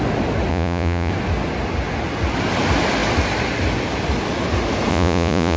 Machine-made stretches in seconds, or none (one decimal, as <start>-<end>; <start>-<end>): 0.5-1.1; 4.9-5.6